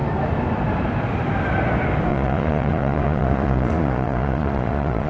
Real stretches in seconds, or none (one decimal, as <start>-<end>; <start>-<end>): 0.0-2.1